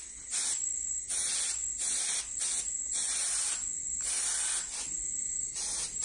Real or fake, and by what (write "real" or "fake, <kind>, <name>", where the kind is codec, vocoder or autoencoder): real